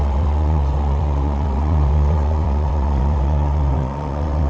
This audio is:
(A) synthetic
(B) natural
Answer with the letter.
A